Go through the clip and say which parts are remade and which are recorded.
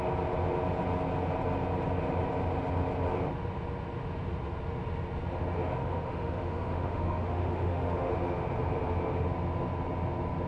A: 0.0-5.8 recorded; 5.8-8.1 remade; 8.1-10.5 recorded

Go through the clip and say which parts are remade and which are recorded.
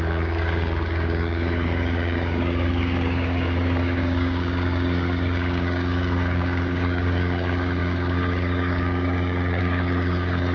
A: 0.0-10.5 remade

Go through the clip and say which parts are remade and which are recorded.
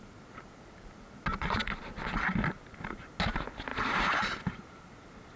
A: 0.0-3.7 recorded; 3.7-4.8 remade; 4.8-5.4 recorded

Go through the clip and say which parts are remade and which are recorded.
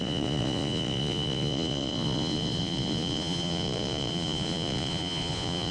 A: 0.0-5.7 remade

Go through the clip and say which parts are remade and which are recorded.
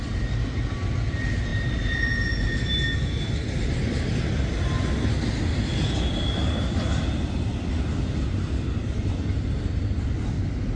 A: 0.0-10.8 recorded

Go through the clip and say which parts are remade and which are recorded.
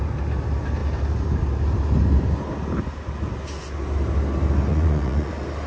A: 0.0-4.7 recorded; 4.7-5.3 remade; 5.3-5.7 recorded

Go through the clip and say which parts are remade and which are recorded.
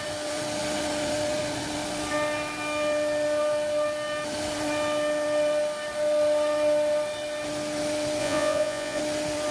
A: 0.0-8.2 recorded; 8.2-9.0 remade; 9.0-9.5 recorded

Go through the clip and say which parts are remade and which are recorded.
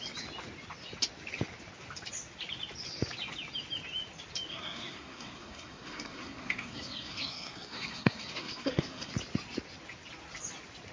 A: 0.0-4.5 recorded; 4.5-9.1 remade; 9.1-10.9 recorded